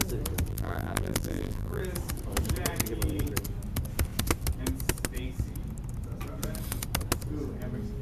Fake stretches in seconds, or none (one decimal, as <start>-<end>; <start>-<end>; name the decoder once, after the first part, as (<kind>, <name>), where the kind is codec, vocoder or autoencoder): 0.5-1.8 (vocoder, BigVGAN v2)

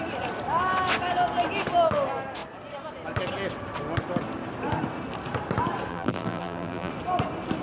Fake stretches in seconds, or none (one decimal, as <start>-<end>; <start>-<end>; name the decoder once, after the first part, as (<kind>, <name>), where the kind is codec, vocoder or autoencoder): 5.9-6.9 (vocoder, BigVGAN v2)

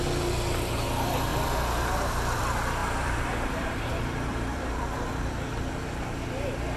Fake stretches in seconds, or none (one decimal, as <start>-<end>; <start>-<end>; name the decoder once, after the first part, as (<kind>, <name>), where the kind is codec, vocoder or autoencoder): 2.8-4.8 (vocoder, BigVGAN v2)

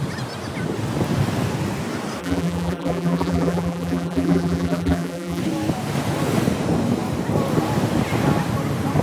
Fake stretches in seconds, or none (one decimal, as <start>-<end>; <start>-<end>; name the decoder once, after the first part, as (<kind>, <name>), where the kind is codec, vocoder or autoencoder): 2.2-5.4 (vocoder, BigVGAN v2)

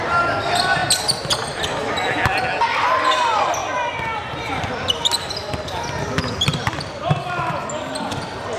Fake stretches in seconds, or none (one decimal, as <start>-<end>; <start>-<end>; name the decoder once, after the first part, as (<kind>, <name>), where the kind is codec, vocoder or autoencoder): none